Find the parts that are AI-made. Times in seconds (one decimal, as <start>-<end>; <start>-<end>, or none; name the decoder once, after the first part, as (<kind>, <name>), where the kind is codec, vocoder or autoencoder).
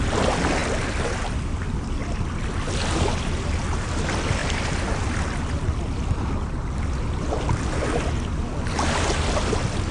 none